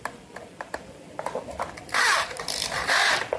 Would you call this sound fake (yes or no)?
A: no